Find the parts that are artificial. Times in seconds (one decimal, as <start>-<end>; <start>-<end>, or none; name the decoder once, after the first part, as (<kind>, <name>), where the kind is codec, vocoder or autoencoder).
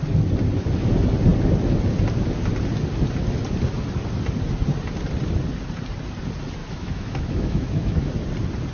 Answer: 6.6-8.1 (autoencoder, DAC-VAE)